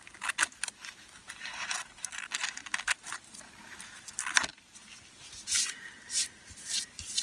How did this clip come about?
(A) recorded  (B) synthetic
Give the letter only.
A